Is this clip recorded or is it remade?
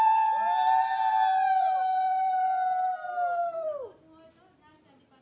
recorded